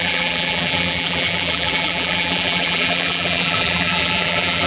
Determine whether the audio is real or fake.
fake